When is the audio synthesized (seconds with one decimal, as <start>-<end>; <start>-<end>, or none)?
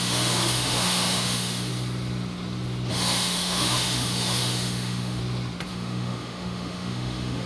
0.0-1.7; 2.9-5.2; 5.7-7.5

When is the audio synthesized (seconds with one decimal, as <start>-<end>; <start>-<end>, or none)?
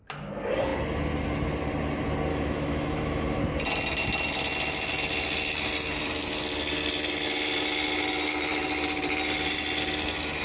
2.3-3.4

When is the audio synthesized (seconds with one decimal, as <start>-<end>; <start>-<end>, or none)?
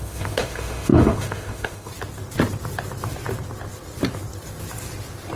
0.0-1.9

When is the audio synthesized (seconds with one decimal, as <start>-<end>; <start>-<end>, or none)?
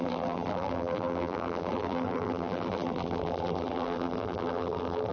0.0-5.1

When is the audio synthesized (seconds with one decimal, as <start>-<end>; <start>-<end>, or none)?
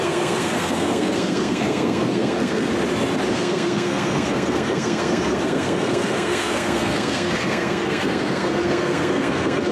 0.0-2.7; 3.3-9.7